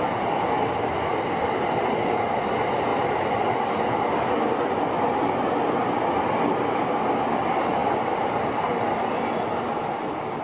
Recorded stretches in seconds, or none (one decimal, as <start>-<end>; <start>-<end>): 0.0-2.9; 5.5-7.8; 8.9-10.4